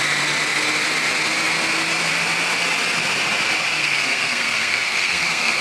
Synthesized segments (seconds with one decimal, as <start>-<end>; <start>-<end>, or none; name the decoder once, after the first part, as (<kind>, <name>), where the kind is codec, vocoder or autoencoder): 3.8-5.6 (codec, SNAC)